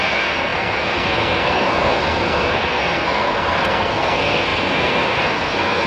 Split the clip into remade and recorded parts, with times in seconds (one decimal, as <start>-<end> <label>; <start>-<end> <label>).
0.0-5.9 remade